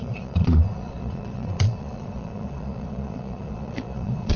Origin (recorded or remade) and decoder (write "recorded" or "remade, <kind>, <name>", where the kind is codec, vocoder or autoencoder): remade, vocoder, Vocos